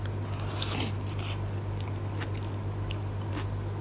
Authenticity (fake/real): real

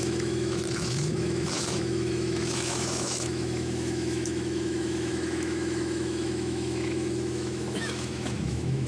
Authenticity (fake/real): fake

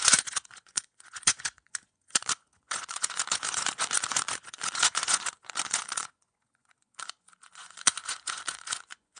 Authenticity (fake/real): fake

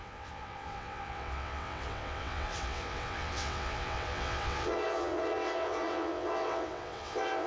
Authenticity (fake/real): fake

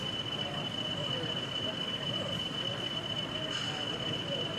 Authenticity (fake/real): real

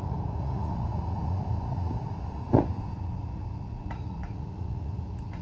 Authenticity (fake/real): fake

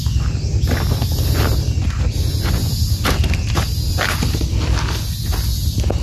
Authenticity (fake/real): real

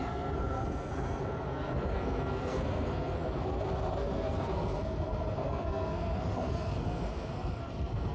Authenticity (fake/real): fake